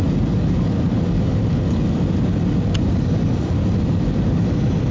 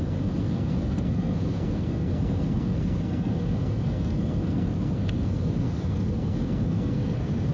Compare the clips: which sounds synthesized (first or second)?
second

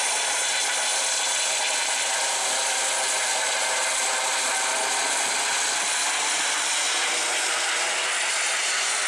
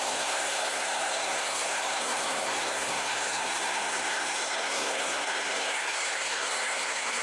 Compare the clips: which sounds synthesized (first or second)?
second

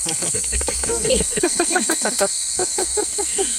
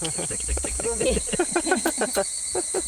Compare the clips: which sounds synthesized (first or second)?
first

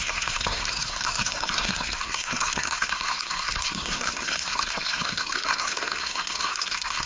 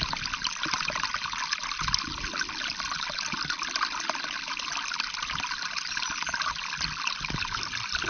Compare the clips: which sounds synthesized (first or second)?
first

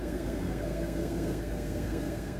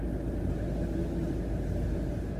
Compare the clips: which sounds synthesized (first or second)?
first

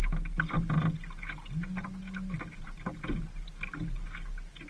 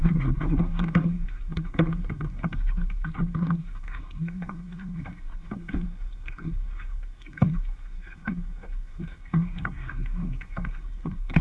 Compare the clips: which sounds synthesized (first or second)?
second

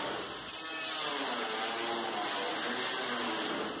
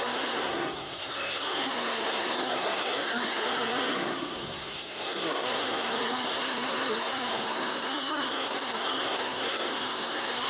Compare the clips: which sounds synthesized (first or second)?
second